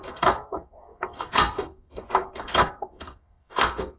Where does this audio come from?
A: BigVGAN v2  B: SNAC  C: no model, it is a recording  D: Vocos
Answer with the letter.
B